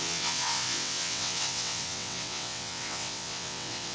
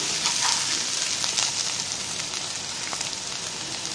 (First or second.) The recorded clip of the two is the second